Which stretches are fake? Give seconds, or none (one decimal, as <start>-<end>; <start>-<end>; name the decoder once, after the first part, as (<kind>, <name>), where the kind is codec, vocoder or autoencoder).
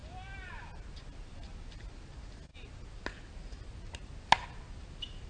none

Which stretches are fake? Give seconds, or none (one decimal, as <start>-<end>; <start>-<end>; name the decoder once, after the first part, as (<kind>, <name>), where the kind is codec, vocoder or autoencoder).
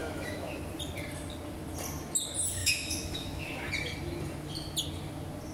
0.0-0.6 (autoencoder, DAC-VAE); 2.6-3.7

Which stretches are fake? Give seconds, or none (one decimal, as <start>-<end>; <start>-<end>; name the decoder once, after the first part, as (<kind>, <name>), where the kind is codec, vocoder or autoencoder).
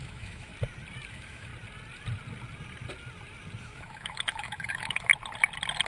0.0-0.5 (autoencoder, DAC-VAE); 1.1-1.5; 3.6-5.1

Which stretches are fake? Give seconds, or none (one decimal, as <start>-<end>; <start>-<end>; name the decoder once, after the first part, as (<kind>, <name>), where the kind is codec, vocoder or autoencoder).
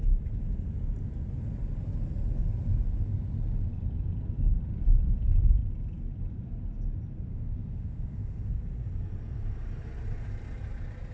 7.3-8.5 (autoencoder, DAC-VAE)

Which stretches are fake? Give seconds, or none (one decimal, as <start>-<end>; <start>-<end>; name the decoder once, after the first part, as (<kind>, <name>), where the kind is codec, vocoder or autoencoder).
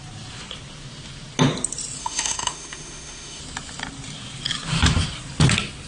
2.0-3.4 (autoencoder, DAC-VAE)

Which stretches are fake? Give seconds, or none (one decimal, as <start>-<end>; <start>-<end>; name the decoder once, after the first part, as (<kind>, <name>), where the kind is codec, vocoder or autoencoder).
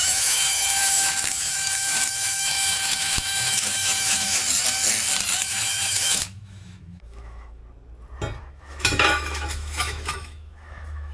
0.0-4.4 (autoencoder, DAC-VAE); 5.4-7.6; 8.4-11.1